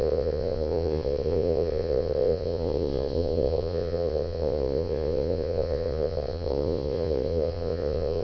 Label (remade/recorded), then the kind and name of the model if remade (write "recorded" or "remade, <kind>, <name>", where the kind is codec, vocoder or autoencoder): remade, vocoder, Vocos